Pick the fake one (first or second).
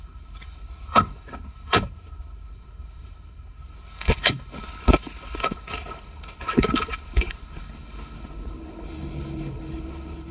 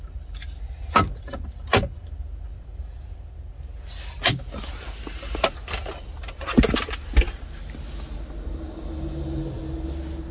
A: first